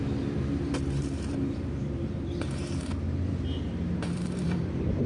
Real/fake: fake